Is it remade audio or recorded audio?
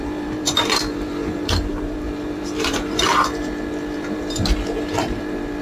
remade